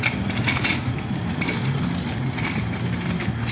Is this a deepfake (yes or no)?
no